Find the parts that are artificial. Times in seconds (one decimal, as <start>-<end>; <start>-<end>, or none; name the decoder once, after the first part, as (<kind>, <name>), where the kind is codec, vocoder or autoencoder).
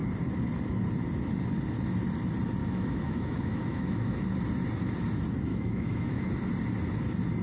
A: 2.6-4.2 (autoencoder, DAC-VAE); 5.5-6.3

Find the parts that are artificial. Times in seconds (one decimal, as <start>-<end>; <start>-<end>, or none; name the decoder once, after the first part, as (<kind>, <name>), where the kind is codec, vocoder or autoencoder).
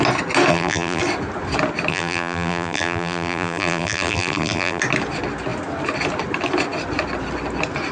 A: 0.5-1.0 (vocoder, BigVGAN v2); 1.9-4.8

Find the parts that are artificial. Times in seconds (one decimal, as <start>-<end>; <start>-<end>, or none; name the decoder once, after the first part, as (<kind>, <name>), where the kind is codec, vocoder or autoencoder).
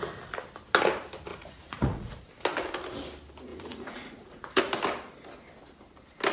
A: 1.3-2.2 (vocoder, Vocos); 3.5-4.6